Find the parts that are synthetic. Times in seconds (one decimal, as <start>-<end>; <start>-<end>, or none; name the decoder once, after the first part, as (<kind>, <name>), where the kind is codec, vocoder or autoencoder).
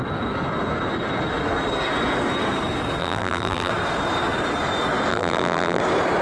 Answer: 3.0-3.7 (vocoder, BigVGAN v2); 5.1-5.8